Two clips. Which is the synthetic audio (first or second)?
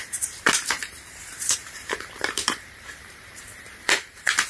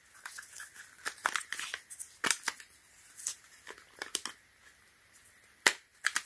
first